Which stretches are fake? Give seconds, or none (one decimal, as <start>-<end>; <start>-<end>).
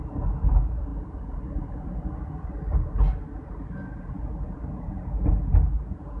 none